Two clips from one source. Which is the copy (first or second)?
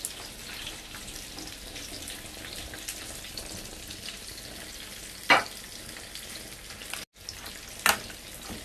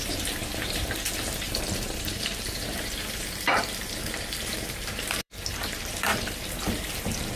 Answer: second